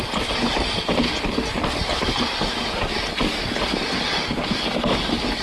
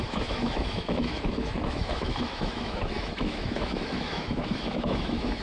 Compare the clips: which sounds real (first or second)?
first